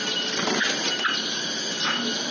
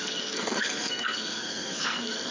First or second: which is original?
first